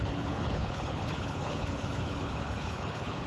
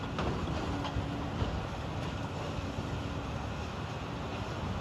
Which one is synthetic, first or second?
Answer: first